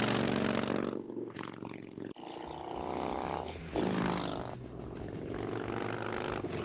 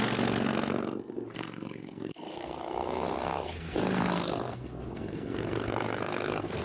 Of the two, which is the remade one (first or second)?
second